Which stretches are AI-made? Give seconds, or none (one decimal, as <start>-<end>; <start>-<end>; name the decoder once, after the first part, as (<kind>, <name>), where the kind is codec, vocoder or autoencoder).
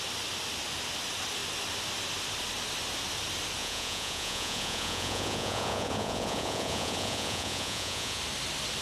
3.6-8.2 (vocoder, Vocos)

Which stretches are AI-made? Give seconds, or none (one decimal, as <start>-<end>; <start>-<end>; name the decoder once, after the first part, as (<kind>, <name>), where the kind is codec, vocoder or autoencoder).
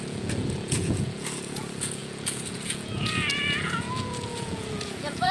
0.0-5.3 (vocoder, Vocos)